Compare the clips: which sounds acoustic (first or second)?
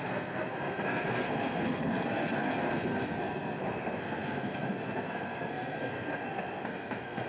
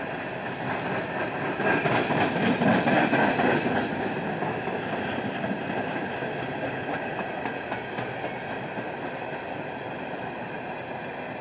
second